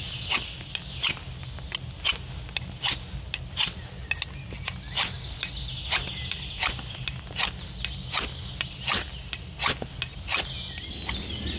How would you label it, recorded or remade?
recorded